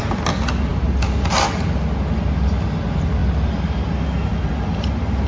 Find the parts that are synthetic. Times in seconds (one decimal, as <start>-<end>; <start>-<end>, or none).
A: none